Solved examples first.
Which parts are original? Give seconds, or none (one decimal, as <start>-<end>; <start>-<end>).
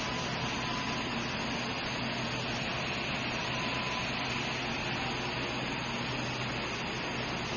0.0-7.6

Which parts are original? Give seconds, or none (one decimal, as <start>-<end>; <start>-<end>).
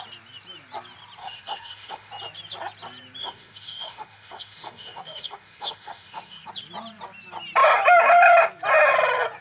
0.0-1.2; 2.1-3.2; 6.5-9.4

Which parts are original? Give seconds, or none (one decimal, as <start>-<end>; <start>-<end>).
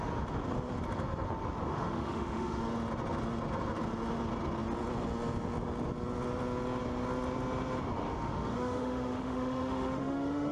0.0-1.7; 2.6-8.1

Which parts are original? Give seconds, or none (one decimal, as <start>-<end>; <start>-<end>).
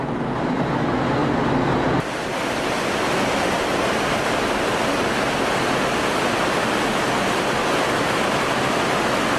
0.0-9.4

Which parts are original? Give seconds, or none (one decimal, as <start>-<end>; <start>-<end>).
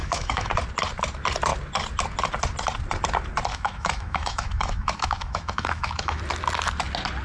0.5-3.5; 6.2-7.2